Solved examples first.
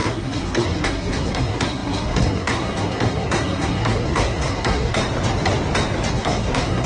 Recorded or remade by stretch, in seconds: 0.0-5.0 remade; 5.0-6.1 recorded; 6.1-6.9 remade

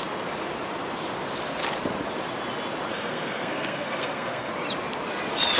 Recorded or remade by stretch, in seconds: 0.0-2.9 recorded; 2.9-4.5 remade; 4.5-5.6 recorded

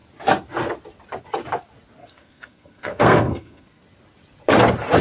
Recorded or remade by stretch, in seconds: 0.0-2.0 recorded; 2.0-3.8 remade; 3.8-5.0 recorded

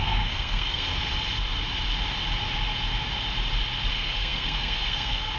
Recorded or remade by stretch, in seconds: 0.0-0.9 remade; 0.9-3.9 recorded; 3.9-5.4 remade

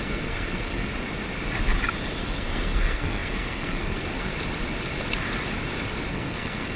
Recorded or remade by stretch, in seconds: 0.0-0.9 remade; 0.9-2.2 recorded; 2.2-4.3 remade; 4.3-6.1 recorded; 6.1-6.8 remade

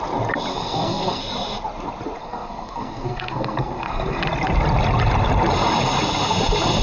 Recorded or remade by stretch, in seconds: 0.0-0.5 recorded; 0.5-1.2 remade; 1.2-2.2 recorded; 2.2-4.2 remade; 4.2-6.8 recorded

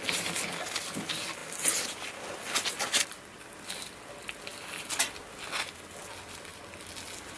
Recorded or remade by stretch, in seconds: 0.0-7.4 recorded